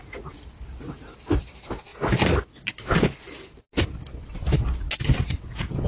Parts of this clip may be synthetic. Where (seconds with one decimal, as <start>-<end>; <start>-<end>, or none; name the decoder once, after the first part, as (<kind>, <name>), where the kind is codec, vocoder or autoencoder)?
none